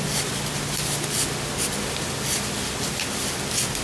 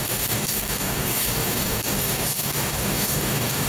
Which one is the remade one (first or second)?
second